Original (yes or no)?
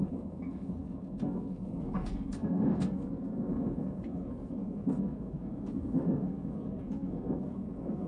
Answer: no